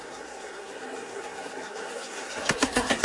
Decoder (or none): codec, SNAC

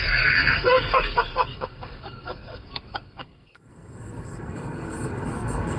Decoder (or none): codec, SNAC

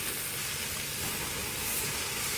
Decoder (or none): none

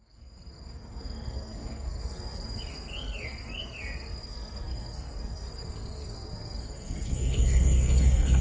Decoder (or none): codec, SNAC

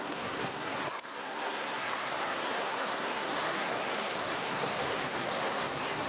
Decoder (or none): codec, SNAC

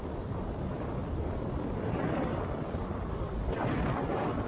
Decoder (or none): none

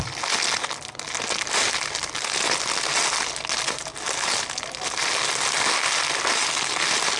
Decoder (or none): none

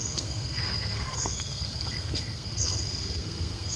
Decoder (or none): codec, SNAC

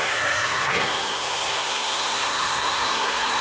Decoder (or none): codec, SNAC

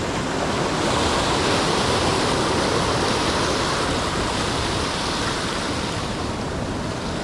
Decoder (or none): none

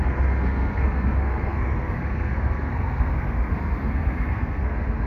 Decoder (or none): codec, SNAC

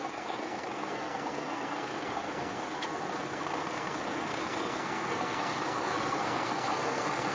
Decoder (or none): codec, SNAC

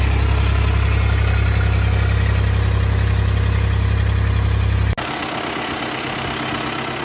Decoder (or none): none